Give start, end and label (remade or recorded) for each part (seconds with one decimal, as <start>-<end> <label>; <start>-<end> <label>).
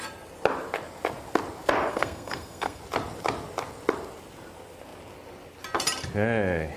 0.0-1.9 recorded; 1.9-2.8 remade; 2.8-6.8 recorded